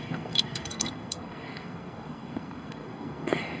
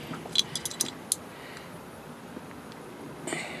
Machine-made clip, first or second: first